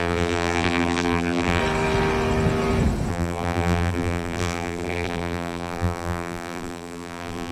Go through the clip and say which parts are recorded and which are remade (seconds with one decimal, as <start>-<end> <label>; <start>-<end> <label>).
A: 0.0-1.6 remade; 1.6-3.1 recorded; 3.1-7.5 remade